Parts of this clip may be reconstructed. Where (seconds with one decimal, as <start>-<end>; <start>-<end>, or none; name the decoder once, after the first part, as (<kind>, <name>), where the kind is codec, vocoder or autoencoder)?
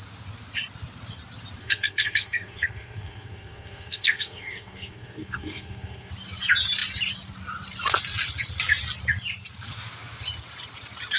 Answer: 1.6-6.1 (codec, SNAC)